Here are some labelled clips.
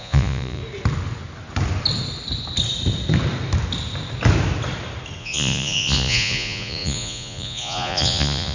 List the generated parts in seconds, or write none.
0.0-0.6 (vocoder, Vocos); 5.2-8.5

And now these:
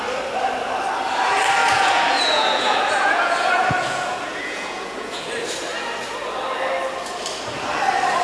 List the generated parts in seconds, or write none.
1.6-5.2 (vocoder, Vocos)

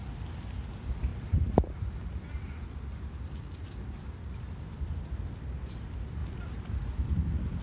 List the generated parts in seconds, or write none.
none

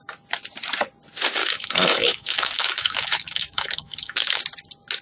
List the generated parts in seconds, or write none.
1.4-4.4 (autoencoder, DAC-VAE)

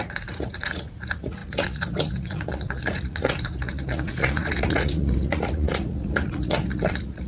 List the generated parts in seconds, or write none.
0.0-7.3 (vocoder, Vocos)